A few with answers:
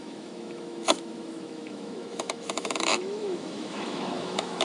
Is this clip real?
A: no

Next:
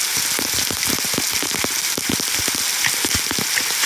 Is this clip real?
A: yes